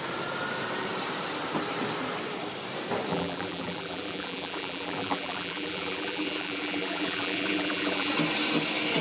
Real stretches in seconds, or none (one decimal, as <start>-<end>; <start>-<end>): 0.0-3.1; 8.1-9.0